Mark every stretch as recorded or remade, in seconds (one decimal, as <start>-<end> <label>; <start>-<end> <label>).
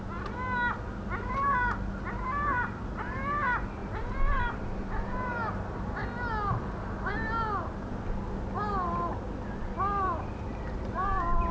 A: 0.0-11.5 recorded